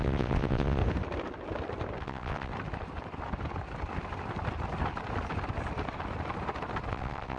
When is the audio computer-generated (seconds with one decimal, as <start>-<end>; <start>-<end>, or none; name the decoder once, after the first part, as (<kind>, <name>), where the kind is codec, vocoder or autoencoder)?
0.0-0.8 (vocoder, WaveNeXt); 2.0-2.5; 6.9-7.4